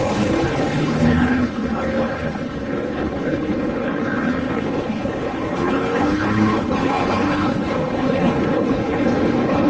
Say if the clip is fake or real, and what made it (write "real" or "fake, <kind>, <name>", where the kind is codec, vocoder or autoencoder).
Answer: fake, codec, HILCodec